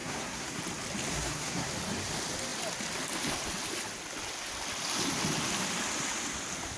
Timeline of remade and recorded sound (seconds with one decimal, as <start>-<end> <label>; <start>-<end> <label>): 0.0-0.6 remade; 0.6-1.1 recorded; 1.1-1.7 remade; 1.7-6.8 recorded